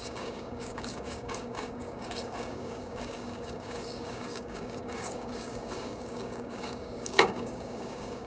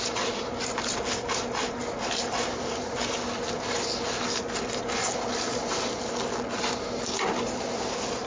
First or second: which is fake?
first